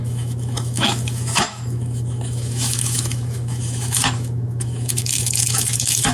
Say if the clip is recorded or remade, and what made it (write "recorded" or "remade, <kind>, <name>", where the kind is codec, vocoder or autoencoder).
remade, autoencoder, DAC-VAE